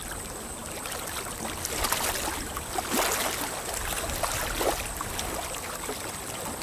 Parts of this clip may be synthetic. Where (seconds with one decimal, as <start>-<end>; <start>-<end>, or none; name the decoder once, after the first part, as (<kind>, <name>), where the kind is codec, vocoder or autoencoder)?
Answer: none

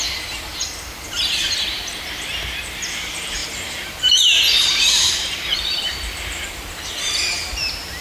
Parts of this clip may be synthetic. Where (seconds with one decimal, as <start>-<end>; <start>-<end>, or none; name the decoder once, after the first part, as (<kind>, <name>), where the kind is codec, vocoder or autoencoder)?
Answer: 0.0-0.5 (vocoder, BigVGAN v2); 1.2-8.0

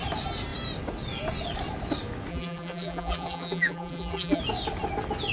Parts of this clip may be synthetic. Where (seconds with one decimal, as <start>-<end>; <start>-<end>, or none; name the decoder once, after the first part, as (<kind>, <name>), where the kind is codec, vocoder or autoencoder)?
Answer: 2.3-4.4 (vocoder, BigVGAN v2)

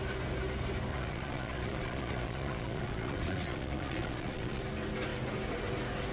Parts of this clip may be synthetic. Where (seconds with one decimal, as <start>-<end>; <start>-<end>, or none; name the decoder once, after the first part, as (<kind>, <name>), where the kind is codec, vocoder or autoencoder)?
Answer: 0.9-4.6 (vocoder, Vocos)

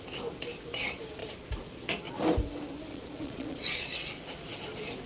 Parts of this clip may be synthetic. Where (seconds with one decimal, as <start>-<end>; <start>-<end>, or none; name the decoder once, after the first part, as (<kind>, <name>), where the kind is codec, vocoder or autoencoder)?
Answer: 2.9-3.7 (vocoder, Vocos)

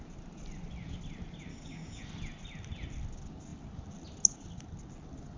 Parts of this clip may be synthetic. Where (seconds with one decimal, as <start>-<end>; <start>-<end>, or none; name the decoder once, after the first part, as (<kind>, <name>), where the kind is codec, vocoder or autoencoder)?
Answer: 1.5-2.0 (codec, DAC)

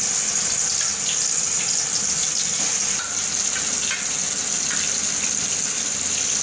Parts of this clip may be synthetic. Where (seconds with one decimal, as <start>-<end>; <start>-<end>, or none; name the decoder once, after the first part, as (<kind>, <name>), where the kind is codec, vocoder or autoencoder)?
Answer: none

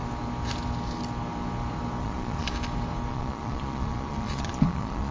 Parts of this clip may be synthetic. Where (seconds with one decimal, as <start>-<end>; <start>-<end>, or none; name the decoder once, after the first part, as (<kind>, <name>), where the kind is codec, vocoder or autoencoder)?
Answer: 2.0-2.5 (vocoder, Vocos); 3.1-5.1